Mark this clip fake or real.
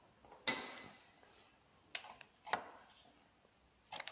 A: real